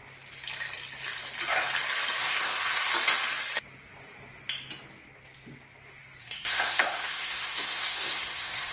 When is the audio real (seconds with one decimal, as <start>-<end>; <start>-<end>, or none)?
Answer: 0.0-2.2; 2.9-6.2